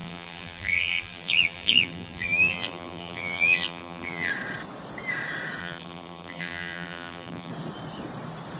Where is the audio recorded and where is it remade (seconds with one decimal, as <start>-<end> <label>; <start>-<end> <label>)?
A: 0.0-4.3 remade; 4.3-5.6 recorded; 5.6-7.5 remade; 7.5-8.6 recorded